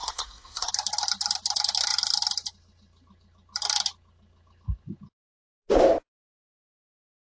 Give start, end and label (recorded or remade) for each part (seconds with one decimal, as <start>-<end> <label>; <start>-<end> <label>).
0.0-0.7 remade; 0.7-7.2 recorded